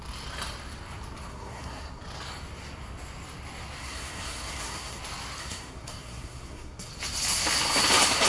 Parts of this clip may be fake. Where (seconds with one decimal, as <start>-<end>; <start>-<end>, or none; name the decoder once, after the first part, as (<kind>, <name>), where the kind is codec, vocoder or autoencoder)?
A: 1.3-2.0 (codec, SNAC); 3.8-5.0; 5.4-6.9